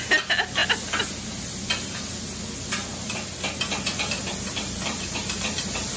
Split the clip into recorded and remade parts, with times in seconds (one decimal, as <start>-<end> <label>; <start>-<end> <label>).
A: 0.0-6.0 recorded